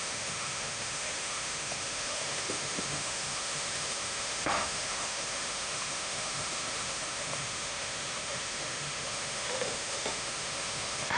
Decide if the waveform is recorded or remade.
remade